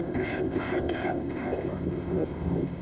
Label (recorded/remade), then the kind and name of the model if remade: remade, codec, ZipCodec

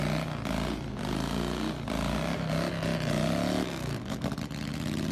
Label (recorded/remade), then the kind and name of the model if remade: recorded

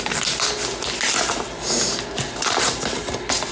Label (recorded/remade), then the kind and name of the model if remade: recorded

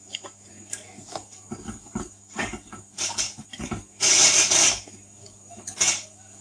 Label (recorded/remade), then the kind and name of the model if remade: remade, codec, DAC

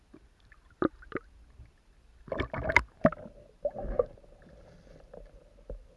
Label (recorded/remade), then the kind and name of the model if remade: recorded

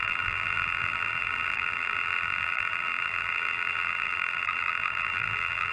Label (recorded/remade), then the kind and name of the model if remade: remade, vocoder, BigVGAN v2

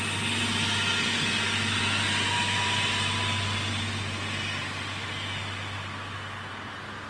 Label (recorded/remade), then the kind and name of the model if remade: recorded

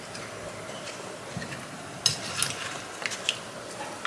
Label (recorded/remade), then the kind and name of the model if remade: recorded